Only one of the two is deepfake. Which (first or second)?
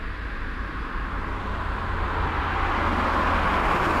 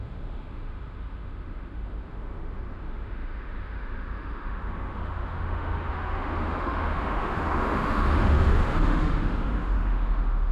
second